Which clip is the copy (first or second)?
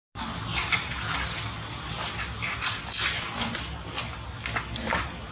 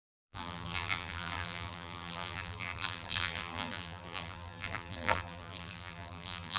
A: second